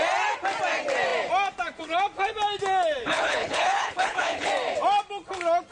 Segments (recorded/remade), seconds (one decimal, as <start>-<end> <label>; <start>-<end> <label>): 0.0-3.0 recorded; 3.0-4.5 remade; 4.5-5.7 recorded